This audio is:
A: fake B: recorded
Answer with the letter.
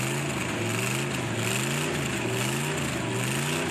B